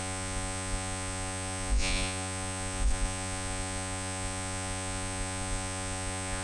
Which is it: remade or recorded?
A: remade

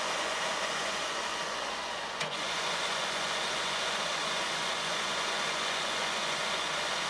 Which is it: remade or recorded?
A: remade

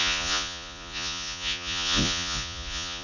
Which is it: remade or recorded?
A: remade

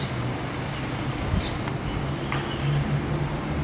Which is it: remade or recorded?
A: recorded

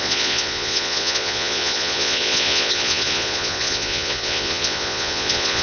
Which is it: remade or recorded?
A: remade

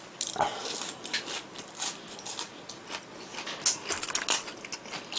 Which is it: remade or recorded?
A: recorded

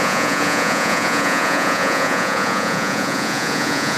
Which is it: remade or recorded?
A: remade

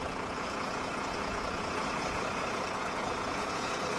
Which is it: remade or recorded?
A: remade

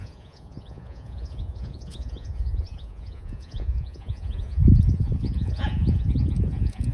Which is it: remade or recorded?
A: remade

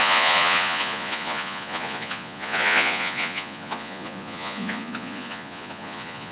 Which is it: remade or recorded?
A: remade